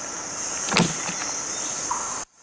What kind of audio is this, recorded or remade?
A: recorded